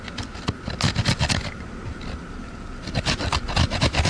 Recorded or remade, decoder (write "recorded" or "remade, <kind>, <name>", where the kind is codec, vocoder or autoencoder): recorded